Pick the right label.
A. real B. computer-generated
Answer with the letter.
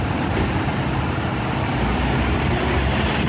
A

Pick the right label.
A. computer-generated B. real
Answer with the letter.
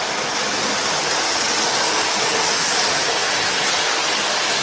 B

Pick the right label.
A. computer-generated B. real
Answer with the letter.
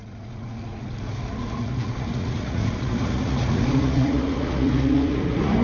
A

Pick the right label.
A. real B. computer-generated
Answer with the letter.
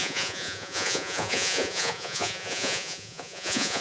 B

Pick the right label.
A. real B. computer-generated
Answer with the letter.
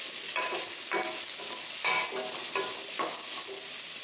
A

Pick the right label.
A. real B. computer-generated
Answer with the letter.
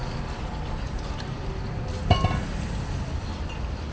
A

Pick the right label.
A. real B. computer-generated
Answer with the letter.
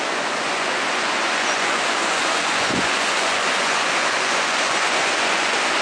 B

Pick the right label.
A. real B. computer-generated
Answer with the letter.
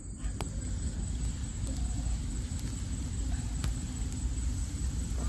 A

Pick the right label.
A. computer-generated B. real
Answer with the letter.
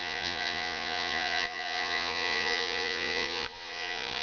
A